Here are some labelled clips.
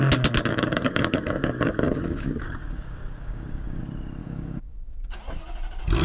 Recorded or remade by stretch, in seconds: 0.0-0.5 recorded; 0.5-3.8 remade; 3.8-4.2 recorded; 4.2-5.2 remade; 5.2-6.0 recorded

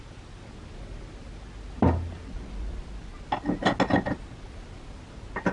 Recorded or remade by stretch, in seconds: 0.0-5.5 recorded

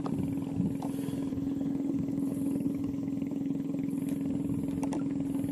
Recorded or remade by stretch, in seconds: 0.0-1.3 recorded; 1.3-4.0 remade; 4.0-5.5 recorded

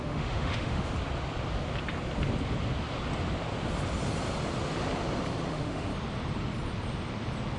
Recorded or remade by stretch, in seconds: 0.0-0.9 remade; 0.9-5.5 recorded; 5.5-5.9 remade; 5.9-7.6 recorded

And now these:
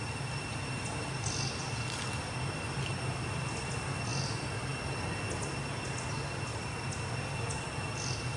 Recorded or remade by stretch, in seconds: 0.0-8.4 recorded